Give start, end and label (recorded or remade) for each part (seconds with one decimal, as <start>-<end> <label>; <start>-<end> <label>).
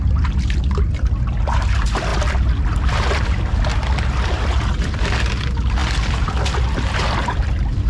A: 0.0-7.9 recorded